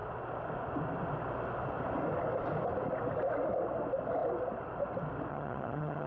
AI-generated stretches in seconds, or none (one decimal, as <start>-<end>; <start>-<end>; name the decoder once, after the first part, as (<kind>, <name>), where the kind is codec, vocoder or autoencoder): 5.3-6.1 (vocoder, HiFi-GAN)